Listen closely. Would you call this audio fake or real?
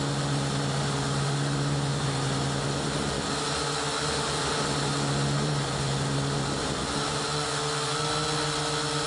real